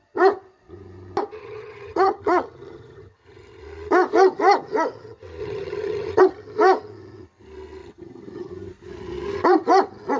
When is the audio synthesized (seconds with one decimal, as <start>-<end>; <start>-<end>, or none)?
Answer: 1.4-3.6; 5.4-6.2; 7.8-8.5